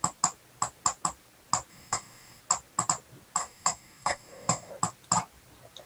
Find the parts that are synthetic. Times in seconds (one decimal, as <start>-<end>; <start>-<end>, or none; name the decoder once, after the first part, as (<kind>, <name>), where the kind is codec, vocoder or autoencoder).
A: 1.7-2.4 (codec, DAC); 3.4-4.7